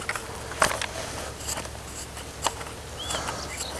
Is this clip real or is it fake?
real